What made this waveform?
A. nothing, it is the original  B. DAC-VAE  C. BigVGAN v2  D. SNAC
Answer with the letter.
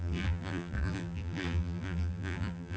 C